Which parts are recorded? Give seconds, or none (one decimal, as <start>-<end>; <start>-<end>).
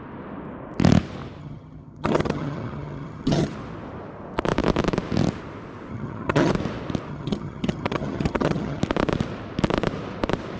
0.0-1.4; 3.5-5.9; 6.5-7.1; 8.8-10.6